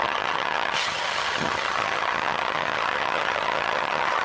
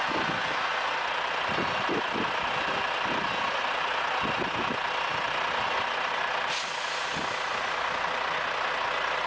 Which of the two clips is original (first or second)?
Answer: second